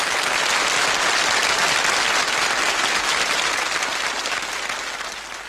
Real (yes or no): yes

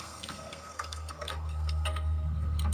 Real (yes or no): no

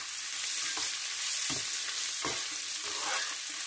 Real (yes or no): yes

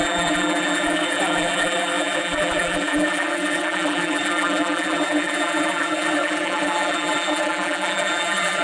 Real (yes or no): no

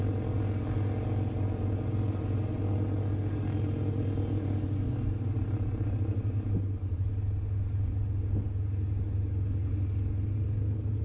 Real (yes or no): yes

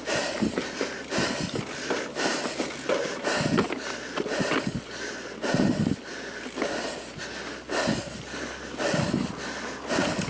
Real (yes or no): yes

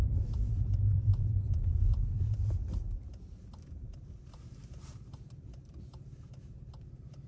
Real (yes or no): no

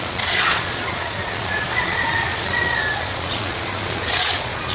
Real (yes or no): no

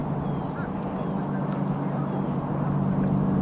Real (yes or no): yes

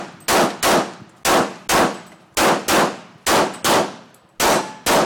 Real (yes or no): yes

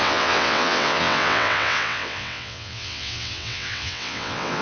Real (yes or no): no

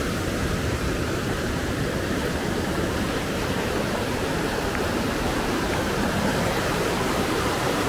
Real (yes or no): no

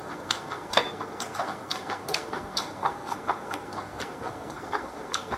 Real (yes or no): no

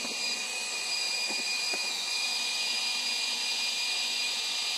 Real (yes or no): no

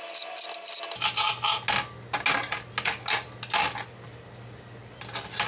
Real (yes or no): yes